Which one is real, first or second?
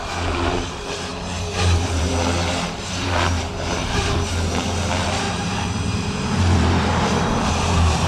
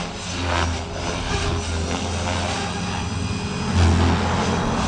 second